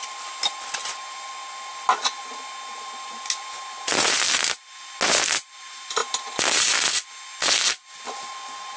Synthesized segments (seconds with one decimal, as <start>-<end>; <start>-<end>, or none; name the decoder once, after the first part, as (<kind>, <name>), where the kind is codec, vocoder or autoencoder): none